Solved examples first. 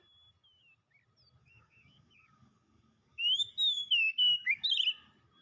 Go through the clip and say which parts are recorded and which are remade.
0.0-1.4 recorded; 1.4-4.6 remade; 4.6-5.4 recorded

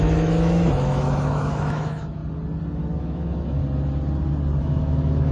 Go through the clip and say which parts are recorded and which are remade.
0.0-2.2 remade; 2.2-3.0 recorded; 3.0-3.6 remade; 3.6-4.6 recorded; 4.6-5.3 remade

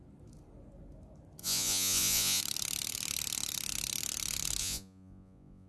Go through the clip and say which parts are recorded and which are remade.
0.0-1.4 recorded; 1.4-2.4 remade; 2.4-4.6 recorded; 4.6-5.7 remade

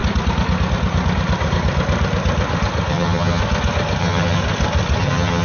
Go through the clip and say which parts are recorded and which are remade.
0.0-2.9 recorded; 2.9-3.4 remade; 3.4-4.0 recorded; 4.0-4.4 remade; 4.4-5.0 recorded; 5.0-5.4 remade